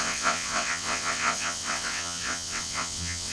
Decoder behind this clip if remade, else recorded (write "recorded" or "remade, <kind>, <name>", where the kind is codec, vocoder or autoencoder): remade, vocoder, WaveNeXt